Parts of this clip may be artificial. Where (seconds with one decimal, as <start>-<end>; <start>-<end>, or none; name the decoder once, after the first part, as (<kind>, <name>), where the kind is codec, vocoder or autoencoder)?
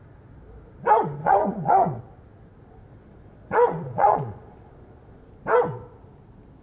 1.2-2.0 (vocoder, Vocos); 2.9-5.3